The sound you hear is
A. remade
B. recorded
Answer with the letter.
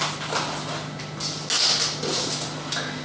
B